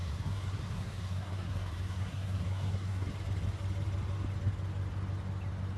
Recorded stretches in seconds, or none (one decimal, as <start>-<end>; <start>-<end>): 3.1-5.8